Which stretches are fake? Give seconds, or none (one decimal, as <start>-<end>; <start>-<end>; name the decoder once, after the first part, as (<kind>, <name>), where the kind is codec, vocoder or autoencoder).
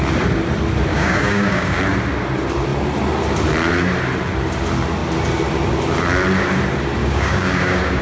0.9-1.8 (codec, DAC); 7.0-8.0